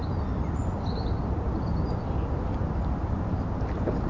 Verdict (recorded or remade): recorded